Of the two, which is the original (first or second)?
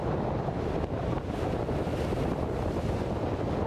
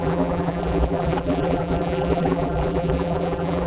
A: first